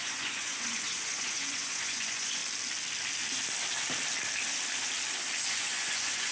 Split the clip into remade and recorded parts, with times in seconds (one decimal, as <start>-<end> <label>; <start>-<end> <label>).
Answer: 0.0-2.4 remade; 2.4-5.5 recorded; 5.5-6.3 remade